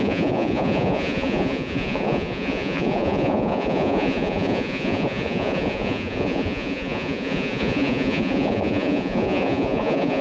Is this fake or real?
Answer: fake